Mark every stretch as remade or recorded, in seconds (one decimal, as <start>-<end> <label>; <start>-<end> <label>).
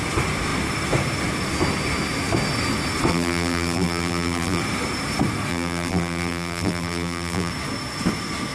0.0-3.1 recorded; 3.1-4.6 remade; 4.6-5.5 recorded; 5.5-7.5 remade; 7.5-8.5 recorded